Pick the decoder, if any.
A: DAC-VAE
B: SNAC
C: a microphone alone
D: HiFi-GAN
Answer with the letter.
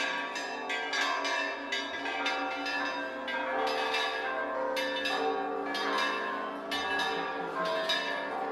C